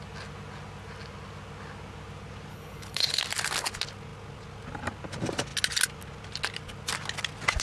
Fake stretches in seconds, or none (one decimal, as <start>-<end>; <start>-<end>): 2.5-3.2